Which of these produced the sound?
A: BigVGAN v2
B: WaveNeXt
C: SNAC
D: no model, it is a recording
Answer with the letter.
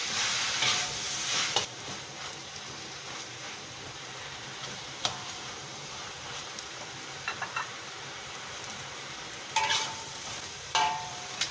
A